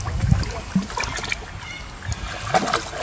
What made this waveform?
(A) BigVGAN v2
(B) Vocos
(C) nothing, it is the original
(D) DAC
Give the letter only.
C